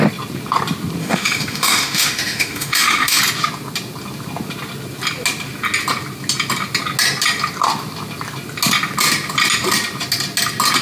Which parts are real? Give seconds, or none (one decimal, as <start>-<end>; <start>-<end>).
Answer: 0.0-1.0; 3.2-10.8